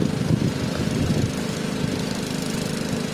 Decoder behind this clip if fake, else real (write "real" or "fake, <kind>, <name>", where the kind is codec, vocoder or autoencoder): real